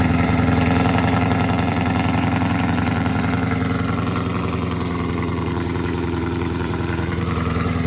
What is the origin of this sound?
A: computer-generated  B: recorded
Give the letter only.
A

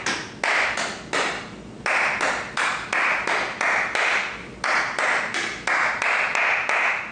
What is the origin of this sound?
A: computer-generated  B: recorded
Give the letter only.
B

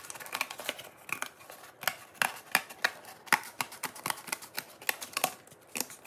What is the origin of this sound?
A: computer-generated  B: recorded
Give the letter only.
B